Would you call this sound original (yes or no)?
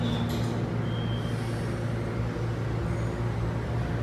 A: yes